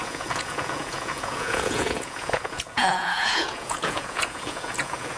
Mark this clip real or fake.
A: fake